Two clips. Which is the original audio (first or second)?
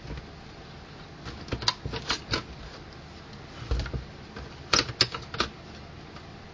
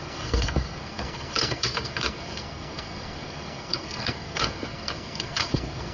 first